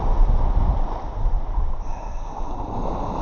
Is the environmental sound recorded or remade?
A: recorded